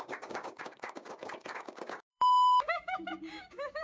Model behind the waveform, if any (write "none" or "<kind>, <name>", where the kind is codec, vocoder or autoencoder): codec, DAC